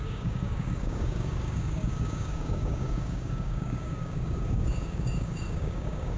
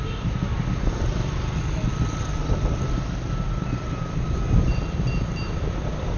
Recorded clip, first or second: second